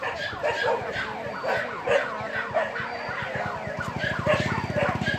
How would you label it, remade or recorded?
recorded